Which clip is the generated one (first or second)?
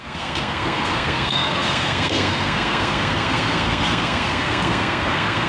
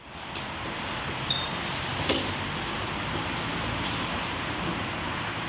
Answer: first